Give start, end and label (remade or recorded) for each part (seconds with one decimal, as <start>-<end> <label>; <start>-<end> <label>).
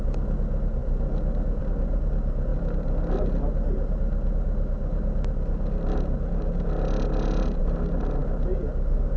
0.0-9.2 recorded